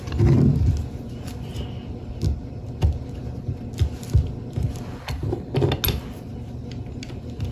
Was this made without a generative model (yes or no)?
yes